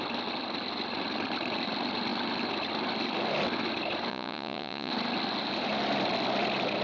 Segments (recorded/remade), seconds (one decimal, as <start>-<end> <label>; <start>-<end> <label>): 0.0-4.1 recorded; 4.1-4.9 remade; 4.9-6.8 recorded